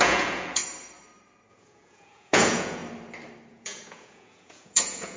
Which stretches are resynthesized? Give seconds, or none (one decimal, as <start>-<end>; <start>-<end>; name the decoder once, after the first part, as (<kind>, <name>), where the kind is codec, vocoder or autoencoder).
0.0-0.6 (vocoder, Vocos); 1.5-2.8; 3.5-5.2